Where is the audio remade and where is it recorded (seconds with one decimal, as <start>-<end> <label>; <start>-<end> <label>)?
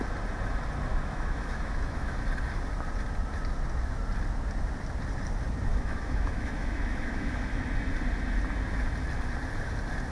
0.0-0.9 recorded; 0.9-2.2 remade; 2.2-5.7 recorded; 5.7-7.4 remade; 7.4-10.1 recorded